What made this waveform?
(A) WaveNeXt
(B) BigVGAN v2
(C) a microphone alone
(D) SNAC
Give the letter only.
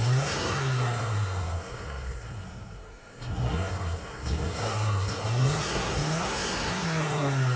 D